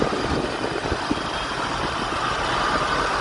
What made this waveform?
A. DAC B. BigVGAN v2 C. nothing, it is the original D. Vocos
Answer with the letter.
C